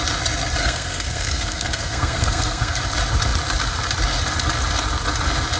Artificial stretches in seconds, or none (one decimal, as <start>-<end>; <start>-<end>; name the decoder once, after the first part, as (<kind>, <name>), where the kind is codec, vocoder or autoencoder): 0.6-2.8 (codec, SNAC)